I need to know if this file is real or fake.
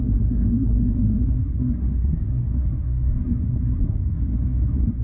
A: fake